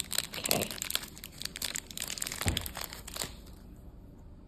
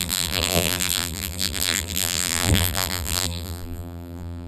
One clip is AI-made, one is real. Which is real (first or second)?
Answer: first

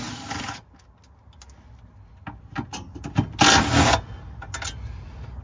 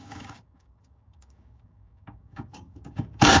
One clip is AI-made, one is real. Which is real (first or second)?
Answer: first